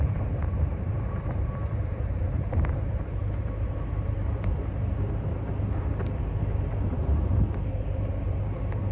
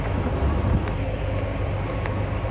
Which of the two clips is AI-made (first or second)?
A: first